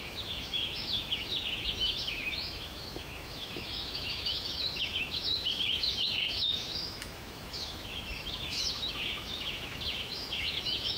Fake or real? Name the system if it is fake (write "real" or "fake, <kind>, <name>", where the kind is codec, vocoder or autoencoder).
fake, autoencoder, DAC-VAE